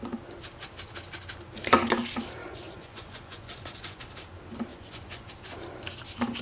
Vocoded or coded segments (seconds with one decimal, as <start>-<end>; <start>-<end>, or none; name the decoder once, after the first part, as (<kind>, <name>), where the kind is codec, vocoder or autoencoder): 2.4-4.0 (vocoder, Vocos); 4.7-5.3